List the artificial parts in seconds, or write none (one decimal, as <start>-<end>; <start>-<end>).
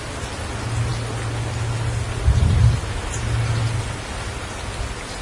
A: none